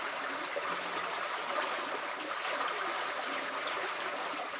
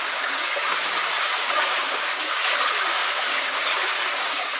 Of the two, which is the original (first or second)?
first